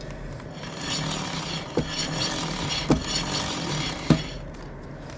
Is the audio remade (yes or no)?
no